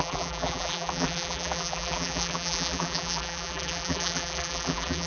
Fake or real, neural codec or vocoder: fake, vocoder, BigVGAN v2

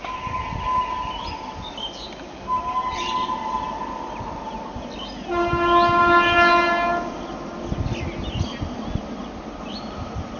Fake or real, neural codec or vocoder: real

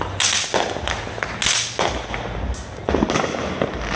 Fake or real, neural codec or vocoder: real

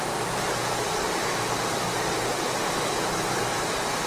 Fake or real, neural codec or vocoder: fake, vocoder, BigVGAN v2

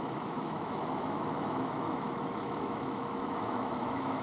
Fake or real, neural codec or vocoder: fake, autoencoder, DAC-VAE